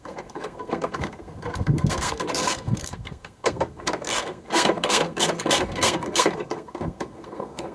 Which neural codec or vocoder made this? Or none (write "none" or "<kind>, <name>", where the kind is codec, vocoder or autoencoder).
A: codec, SNAC